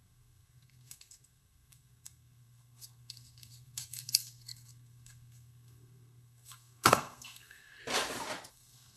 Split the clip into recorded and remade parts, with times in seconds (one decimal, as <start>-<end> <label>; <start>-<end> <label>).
0.0-7.8 remade; 7.8-8.5 recorded; 8.5-9.0 remade